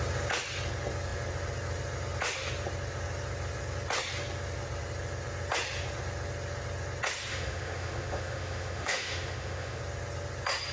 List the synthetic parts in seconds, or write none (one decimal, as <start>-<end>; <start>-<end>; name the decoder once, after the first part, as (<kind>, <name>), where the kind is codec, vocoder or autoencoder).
7.3-9.8 (autoencoder, DAC-VAE)